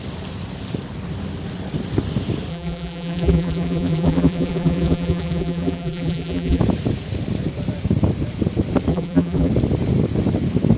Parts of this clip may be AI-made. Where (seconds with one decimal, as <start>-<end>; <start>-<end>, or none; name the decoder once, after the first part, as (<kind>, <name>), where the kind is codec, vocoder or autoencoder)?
2.5-6.6 (vocoder, BigVGAN v2); 8.9-9.5